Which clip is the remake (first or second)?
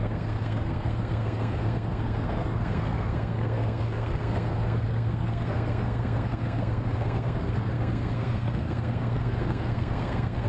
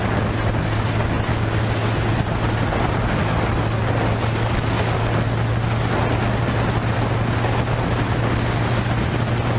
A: first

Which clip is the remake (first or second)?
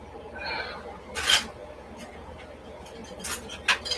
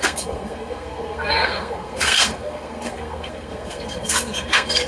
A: second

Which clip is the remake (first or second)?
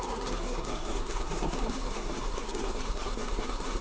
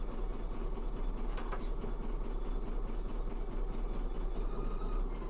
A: first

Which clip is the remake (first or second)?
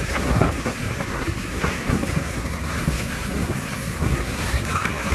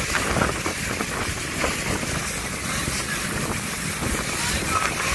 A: first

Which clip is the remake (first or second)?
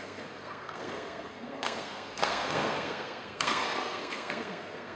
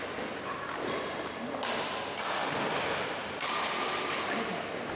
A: first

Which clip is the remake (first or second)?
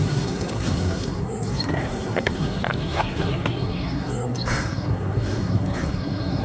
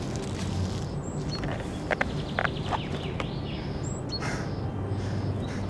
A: first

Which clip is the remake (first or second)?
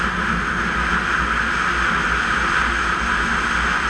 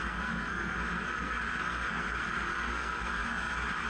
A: second